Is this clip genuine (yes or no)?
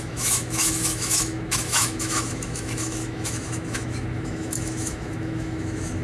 no